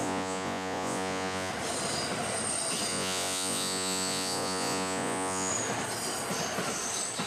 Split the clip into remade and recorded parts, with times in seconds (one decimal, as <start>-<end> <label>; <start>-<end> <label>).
0.0-1.5 remade; 1.5-2.9 recorded; 2.9-5.5 remade; 5.5-7.3 recorded